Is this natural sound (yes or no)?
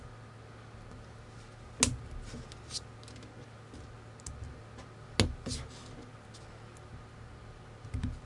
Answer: yes